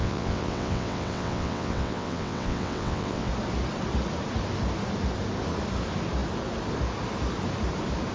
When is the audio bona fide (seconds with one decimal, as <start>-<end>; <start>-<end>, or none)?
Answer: 3.3-8.1